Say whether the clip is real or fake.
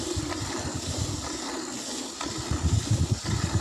real